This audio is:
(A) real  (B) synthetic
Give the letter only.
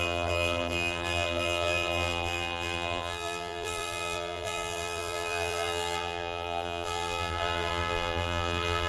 B